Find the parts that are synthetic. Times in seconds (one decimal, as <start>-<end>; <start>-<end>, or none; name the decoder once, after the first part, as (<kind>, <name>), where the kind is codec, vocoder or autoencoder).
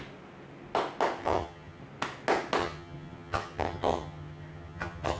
1.2-1.8 (vocoder, HiFi-GAN); 2.6-5.2